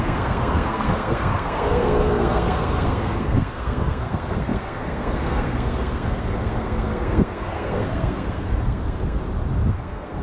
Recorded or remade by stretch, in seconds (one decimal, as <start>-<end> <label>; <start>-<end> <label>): 0.0-9.2 remade; 9.2-9.7 recorded; 9.7-10.2 remade